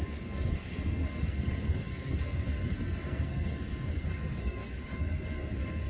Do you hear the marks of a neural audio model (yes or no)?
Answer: yes